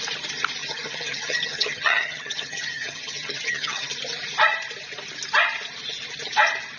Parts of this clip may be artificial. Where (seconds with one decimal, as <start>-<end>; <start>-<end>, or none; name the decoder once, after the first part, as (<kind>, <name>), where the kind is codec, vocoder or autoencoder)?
0.6-3.9 (vocoder, HiFi-GAN)